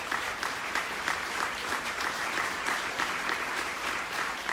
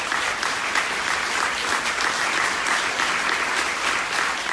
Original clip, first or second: second